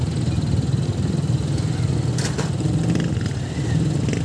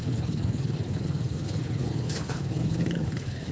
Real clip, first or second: first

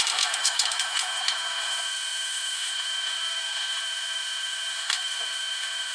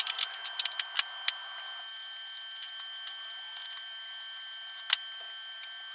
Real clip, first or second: second